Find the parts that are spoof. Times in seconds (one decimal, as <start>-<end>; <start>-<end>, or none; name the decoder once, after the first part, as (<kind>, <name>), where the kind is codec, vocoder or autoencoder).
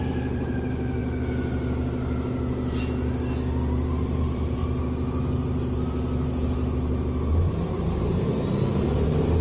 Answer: 0.0-1.0 (vocoder, BigVGAN v2); 3.9-4.6; 7.5-9.4